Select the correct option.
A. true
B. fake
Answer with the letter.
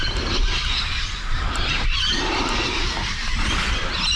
B